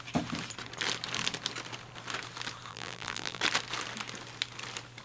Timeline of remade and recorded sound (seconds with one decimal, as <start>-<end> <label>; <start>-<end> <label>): 0.0-2.7 recorded; 2.7-3.4 remade; 3.4-5.0 recorded